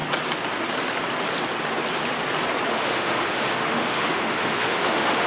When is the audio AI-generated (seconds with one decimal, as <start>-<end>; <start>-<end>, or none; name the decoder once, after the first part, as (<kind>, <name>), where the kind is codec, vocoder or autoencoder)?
2.7-5.3 (autoencoder, DAC-VAE)